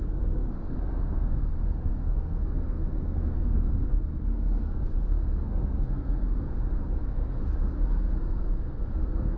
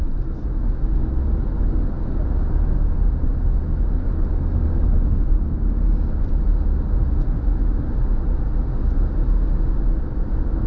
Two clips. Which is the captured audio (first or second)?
second